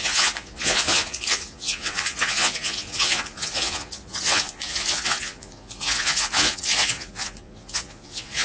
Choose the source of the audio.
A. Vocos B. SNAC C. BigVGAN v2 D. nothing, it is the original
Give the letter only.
A